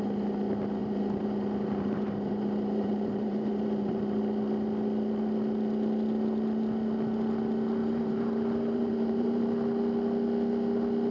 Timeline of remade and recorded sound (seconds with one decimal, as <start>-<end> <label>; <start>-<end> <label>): 0.0-0.8 recorded; 0.8-4.2 remade; 4.2-7.8 recorded; 7.8-9.4 remade; 9.4-11.1 recorded